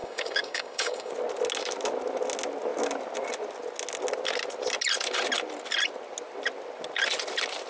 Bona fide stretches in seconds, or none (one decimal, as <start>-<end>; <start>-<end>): 1.1-7.7